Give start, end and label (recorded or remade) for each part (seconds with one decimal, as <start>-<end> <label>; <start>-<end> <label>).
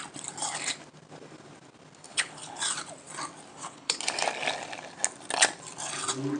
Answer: 0.0-2.1 recorded; 2.1-2.6 remade; 2.6-3.5 recorded; 3.5-4.0 remade; 4.0-6.4 recorded